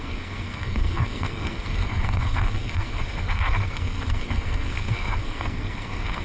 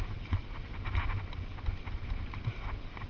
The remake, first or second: first